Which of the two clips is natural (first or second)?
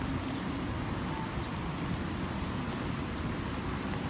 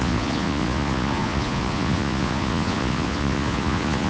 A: first